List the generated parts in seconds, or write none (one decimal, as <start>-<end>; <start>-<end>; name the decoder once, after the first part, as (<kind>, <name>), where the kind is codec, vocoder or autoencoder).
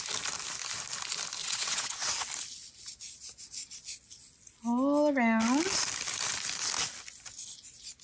1.4-2.1 (vocoder, WaveNeXt)